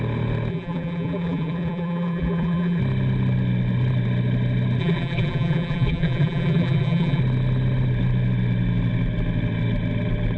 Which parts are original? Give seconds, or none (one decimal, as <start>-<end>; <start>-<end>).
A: 0.0-0.5; 2.8-4.8; 7.2-10.4

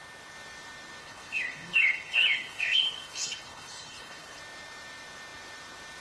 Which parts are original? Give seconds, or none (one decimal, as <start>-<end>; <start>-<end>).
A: 0.0-1.0; 4.4-6.0